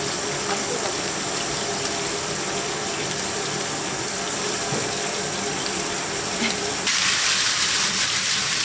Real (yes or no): no